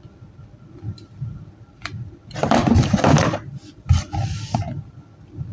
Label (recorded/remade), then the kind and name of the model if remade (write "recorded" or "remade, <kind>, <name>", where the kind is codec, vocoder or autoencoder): remade, vocoder, BigVGAN v2